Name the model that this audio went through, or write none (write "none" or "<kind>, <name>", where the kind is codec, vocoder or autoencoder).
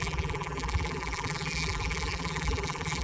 vocoder, BigVGAN v2